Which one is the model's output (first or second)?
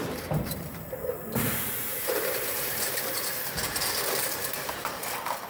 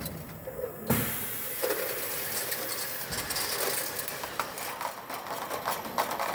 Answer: first